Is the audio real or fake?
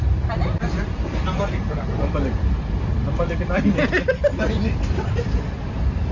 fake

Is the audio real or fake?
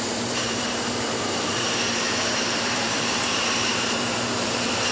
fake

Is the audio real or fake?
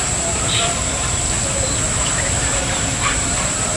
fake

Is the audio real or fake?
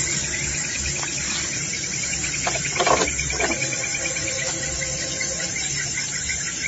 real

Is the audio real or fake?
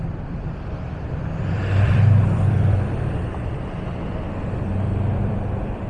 fake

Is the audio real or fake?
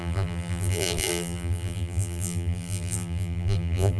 fake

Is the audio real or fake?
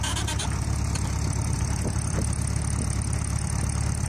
fake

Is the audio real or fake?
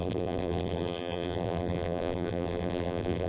fake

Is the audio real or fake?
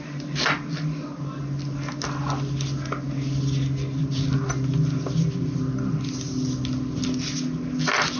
real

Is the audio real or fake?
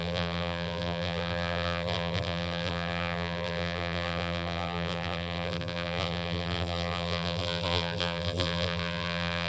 fake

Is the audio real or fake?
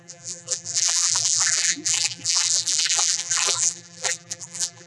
fake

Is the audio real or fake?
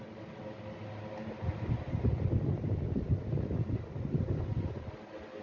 real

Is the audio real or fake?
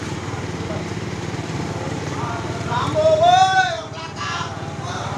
fake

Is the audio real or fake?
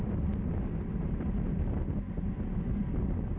real